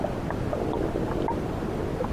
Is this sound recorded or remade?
recorded